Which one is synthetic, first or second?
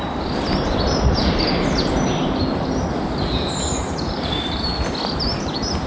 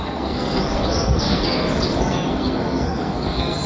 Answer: second